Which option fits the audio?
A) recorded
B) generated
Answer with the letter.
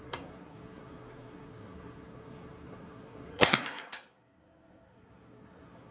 B